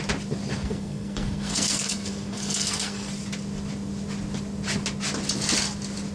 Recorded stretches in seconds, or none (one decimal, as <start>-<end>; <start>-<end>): 0.0-0.5; 3.1-6.1